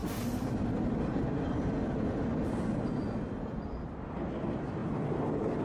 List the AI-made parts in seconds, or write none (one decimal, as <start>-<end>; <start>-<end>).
none